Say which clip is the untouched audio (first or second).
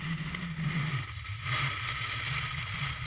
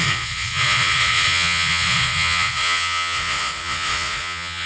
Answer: first